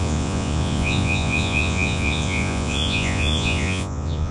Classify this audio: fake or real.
fake